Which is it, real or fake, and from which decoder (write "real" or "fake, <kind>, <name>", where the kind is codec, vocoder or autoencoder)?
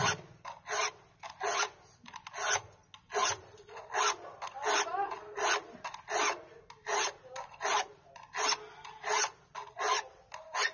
real